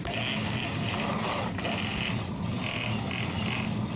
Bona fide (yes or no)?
yes